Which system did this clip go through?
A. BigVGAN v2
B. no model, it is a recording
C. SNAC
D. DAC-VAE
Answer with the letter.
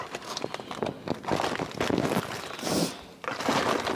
B